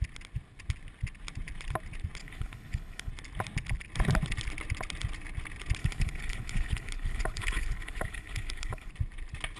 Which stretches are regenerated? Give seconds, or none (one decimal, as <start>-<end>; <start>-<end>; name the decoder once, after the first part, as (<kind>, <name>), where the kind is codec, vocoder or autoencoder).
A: 2.2-3.1 (codec, HILCodec); 5.8-8.9